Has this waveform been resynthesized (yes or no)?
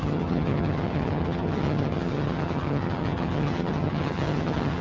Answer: yes